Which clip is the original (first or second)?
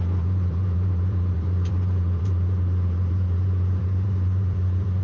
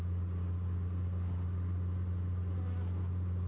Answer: second